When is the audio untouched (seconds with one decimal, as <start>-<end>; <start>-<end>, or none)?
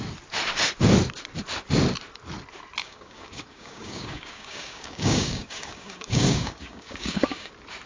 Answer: 0.0-2.8; 7.5-7.9